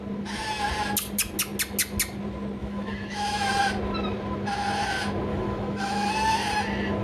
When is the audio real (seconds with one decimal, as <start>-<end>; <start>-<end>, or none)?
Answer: 0.0-2.6; 3.6-5.3; 6.1-7.0

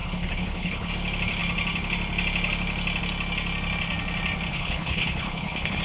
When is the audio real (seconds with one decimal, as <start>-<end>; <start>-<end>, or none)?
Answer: 0.9-4.5

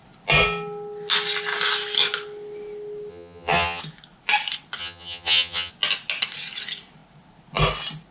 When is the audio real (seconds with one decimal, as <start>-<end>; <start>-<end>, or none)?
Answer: 0.0-3.1; 3.8-4.8; 5.7-8.1

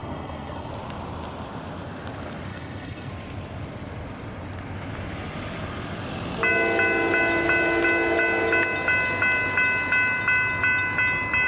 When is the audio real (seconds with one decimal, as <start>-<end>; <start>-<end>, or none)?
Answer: 0.7-2.5; 3.1-11.5

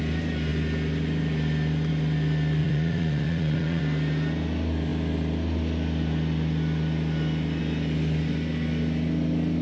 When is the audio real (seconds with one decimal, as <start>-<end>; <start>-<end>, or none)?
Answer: 0.0-2.6; 3.8-9.6

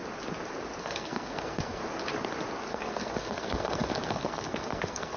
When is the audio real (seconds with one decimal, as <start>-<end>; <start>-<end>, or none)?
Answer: 0.0-0.8; 1.8-2.7